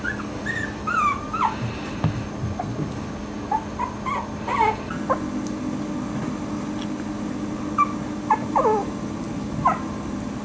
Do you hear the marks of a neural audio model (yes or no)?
no